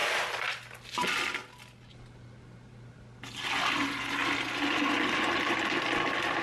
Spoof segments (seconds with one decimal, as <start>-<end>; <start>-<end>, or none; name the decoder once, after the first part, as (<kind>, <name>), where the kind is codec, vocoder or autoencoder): none